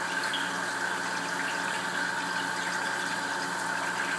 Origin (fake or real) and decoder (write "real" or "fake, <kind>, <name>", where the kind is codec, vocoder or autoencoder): real